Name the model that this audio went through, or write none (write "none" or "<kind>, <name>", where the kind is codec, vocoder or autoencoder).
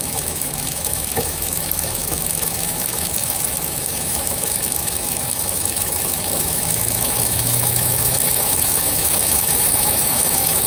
autoencoder, DAC-VAE